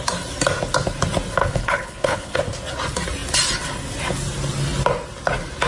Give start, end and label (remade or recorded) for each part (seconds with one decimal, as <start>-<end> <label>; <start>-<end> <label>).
0.0-1.4 recorded; 1.4-2.4 remade; 2.4-5.7 recorded